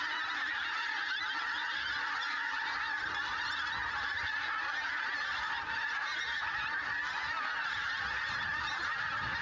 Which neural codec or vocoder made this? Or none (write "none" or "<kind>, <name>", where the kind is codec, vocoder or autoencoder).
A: none